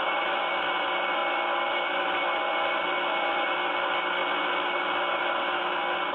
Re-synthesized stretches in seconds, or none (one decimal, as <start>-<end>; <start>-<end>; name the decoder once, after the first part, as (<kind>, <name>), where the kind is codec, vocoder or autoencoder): none

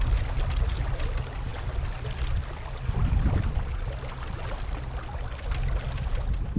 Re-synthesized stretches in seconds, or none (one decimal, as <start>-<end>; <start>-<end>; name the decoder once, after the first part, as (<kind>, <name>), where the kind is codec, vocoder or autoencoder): none

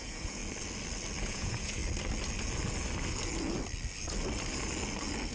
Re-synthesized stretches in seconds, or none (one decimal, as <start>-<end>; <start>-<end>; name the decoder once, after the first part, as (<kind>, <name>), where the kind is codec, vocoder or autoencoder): 0.0-0.4 (vocoder, Vocos); 1.2-1.8